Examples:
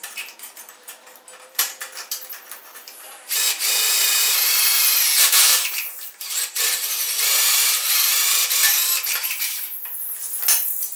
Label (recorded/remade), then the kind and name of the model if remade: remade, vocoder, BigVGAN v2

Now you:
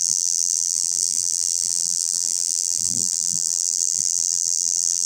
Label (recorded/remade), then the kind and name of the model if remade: remade, vocoder, BigVGAN v2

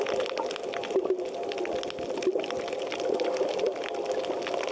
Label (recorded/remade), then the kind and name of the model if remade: recorded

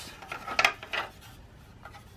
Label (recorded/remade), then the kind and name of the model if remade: recorded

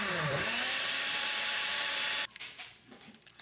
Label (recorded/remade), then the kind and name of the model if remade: remade, vocoder, BigVGAN v2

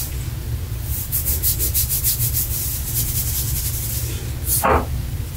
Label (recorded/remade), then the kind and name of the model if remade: recorded